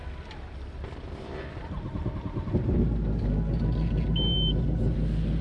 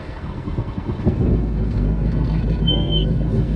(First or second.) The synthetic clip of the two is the second